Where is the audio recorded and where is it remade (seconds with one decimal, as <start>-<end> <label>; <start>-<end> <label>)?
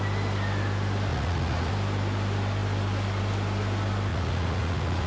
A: 0.0-1.1 recorded; 1.1-1.7 remade; 1.7-4.1 recorded; 4.1-5.1 remade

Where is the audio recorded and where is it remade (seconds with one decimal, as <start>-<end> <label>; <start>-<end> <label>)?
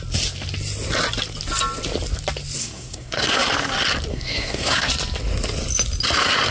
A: 0.0-2.6 recorded; 2.6-3.5 remade; 3.5-4.1 recorded; 4.1-4.9 remade; 4.9-6.5 recorded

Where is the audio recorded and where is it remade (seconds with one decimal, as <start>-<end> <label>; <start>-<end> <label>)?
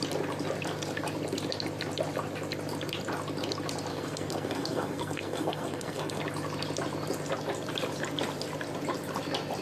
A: 0.0-3.9 recorded; 3.9-6.2 remade; 6.2-9.6 recorded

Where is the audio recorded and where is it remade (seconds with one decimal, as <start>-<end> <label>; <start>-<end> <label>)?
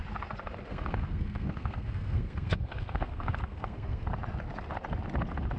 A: 0.0-0.7 recorded; 0.7-4.1 remade; 4.1-5.6 recorded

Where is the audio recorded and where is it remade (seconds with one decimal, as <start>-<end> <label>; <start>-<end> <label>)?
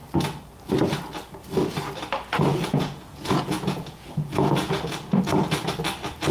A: 0.0-2.5 recorded; 2.5-5.2 remade; 5.2-6.3 recorded